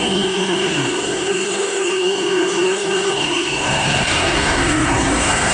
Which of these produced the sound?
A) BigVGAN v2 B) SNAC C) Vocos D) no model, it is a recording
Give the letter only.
B